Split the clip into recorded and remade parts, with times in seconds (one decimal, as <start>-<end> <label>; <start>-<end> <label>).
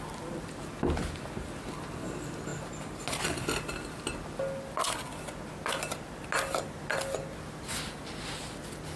0.0-9.0 recorded